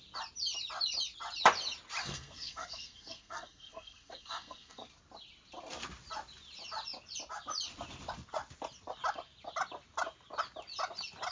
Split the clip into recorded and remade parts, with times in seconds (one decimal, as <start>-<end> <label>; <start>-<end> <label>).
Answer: 0.0-2.0 recorded; 2.0-4.9 remade; 4.9-11.3 recorded